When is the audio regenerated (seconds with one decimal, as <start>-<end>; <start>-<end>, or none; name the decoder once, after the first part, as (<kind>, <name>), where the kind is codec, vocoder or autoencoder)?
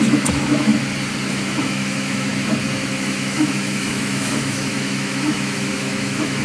0.0-0.7 (autoencoder, DAC-VAE); 1.3-2.3; 2.9-6.4